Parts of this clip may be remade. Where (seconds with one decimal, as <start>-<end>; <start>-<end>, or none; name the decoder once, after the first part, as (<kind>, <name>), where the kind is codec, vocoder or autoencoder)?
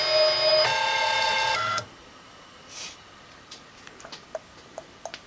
0.5-3.7 (vocoder, BigVGAN v2)